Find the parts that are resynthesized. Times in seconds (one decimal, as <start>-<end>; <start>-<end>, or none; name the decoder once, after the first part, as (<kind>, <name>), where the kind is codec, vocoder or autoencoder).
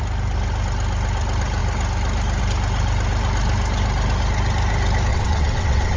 5.1-6.0 (vocoder, WaveNeXt)